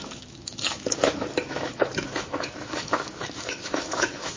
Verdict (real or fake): fake